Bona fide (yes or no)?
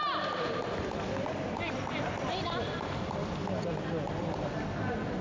no